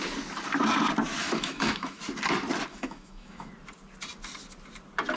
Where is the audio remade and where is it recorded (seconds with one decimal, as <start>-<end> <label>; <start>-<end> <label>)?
0.0-1.2 recorded; 1.2-2.0 remade; 2.0-2.7 recorded; 2.7-3.5 remade; 3.5-5.2 recorded